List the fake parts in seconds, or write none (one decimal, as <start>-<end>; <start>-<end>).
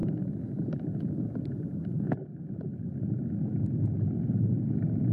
none